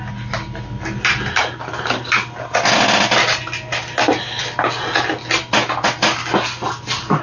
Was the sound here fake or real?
real